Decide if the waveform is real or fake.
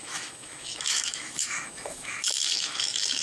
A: fake